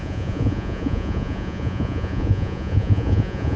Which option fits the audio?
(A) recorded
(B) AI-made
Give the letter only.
B